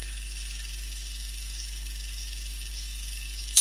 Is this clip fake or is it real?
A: fake